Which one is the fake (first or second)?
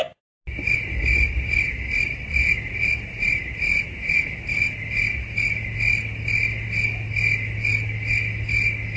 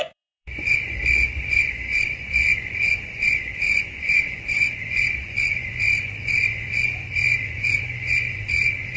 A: second